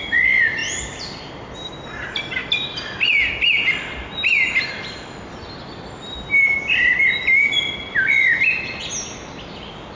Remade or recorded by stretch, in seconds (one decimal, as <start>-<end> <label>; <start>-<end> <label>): 0.0-10.0 recorded

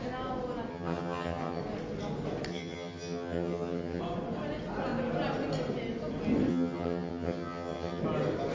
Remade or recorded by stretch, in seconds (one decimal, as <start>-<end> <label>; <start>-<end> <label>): 0.0-0.7 recorded; 0.7-1.6 remade; 1.6-2.5 recorded; 2.5-4.0 remade; 4.0-6.5 recorded; 6.5-8.0 remade; 8.0-8.5 recorded

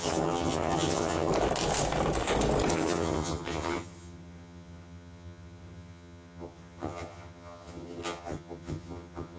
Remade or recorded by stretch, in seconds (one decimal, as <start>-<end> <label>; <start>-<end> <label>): 0.0-1.3 remade; 1.3-2.7 recorded; 2.7-9.4 remade

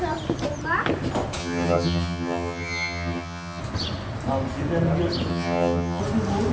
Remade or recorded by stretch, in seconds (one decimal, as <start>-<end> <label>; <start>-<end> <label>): 0.0-1.4 recorded; 1.4-3.6 remade; 3.6-5.3 recorded; 5.3-6.0 remade; 6.0-6.5 recorded

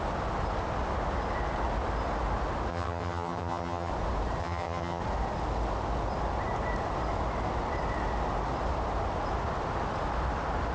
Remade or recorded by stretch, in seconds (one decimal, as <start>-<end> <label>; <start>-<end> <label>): 0.0-2.7 recorded; 2.7-3.9 remade; 3.9-4.4 recorded; 4.4-5.0 remade; 5.0-10.7 recorded

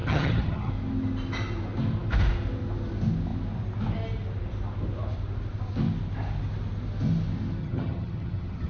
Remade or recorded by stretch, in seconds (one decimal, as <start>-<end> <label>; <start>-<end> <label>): 0.0-0.7 remade; 0.7-7.6 recorded; 7.6-8.7 remade

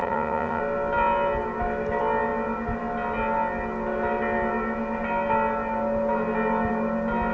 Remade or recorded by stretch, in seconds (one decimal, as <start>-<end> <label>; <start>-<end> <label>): 0.0-0.6 remade; 0.6-7.3 recorded